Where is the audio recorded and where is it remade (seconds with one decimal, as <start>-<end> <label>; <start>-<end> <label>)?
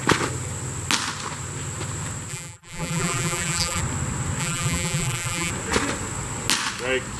0.0-2.3 recorded; 2.3-3.8 remade; 3.8-4.4 recorded; 4.4-5.5 remade; 5.5-7.2 recorded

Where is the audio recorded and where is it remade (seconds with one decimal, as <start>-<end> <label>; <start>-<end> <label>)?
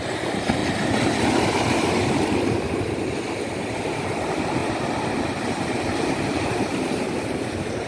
0.0-0.6 remade; 0.6-3.8 recorded; 3.8-4.6 remade; 4.6-5.5 recorded; 5.5-7.9 remade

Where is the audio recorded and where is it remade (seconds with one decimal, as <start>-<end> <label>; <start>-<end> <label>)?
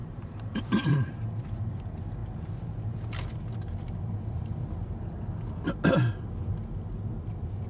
0.0-1.8 remade; 1.8-7.7 recorded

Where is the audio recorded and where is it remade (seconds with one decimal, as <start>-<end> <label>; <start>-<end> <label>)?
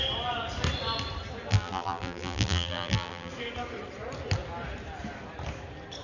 0.0-1.5 recorded; 1.5-3.3 remade; 3.3-6.0 recorded